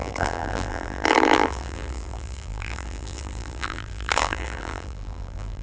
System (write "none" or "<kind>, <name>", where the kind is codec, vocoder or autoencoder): vocoder, BigVGAN v2